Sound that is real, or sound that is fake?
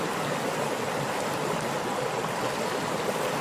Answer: real